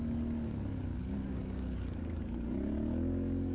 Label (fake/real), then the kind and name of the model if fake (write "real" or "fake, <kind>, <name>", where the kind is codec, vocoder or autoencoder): fake, codec, DAC